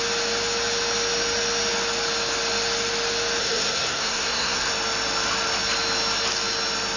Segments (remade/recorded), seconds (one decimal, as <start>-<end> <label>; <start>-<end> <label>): 0.0-3.4 recorded; 3.4-4.7 remade; 4.7-7.0 recorded